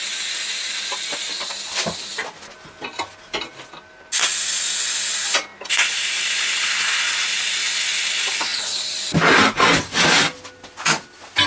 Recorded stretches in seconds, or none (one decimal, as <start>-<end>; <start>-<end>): 0.0-11.5